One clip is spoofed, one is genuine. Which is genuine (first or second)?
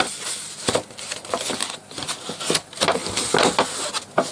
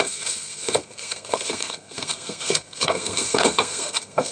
first